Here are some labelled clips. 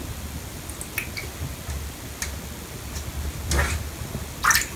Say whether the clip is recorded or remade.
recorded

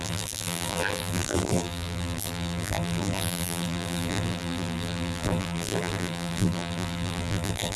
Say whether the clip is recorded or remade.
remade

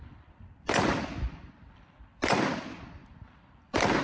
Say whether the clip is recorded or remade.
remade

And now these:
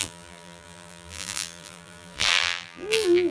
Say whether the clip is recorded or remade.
remade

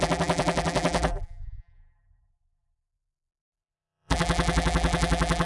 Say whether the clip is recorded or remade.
remade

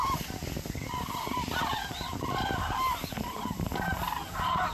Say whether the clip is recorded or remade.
remade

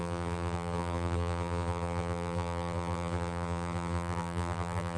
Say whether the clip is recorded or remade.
remade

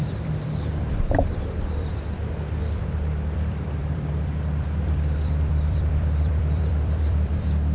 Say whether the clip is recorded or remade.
remade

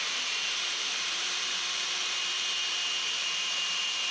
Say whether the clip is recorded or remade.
remade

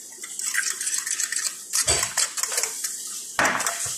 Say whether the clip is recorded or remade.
recorded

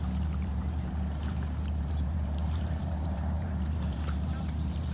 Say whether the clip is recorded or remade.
remade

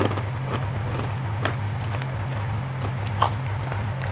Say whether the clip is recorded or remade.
remade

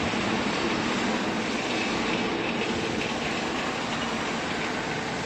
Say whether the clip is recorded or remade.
recorded